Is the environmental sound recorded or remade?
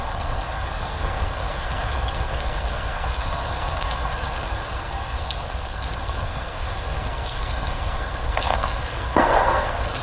remade